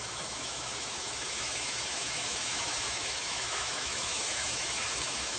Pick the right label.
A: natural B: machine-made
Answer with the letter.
B